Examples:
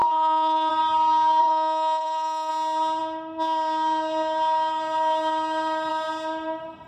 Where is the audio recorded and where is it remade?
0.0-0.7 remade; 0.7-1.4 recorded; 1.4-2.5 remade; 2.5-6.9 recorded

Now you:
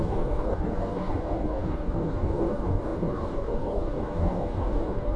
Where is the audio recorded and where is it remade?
0.0-5.2 remade